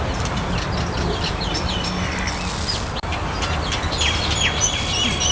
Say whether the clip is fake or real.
real